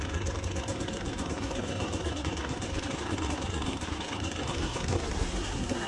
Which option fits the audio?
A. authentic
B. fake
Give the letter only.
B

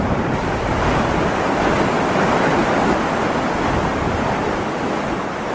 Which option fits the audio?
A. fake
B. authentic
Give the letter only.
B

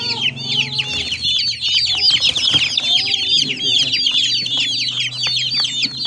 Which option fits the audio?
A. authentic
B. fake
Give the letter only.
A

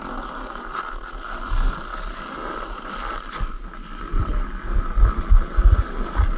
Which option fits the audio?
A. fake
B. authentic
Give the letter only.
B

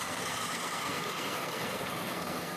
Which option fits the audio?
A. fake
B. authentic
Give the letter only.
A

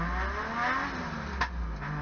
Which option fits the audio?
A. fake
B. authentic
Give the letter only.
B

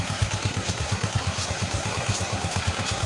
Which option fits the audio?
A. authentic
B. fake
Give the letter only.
B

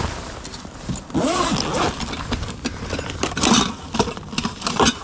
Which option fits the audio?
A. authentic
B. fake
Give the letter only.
A